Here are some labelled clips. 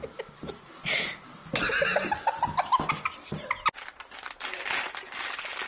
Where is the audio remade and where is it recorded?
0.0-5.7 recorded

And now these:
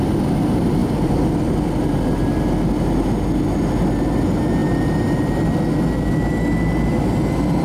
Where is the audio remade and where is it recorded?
0.0-0.8 recorded; 0.8-1.4 remade; 1.4-7.6 recorded

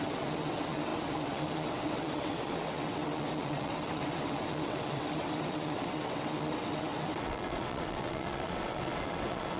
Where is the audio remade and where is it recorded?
0.0-9.6 remade

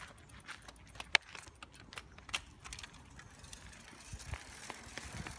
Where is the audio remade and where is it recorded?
0.0-5.4 recorded

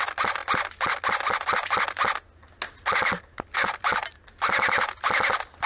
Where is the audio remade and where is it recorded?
0.0-5.7 recorded